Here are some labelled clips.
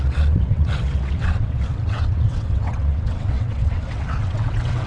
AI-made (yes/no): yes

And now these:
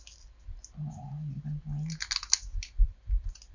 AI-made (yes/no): no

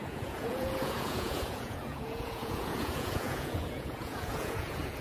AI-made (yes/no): yes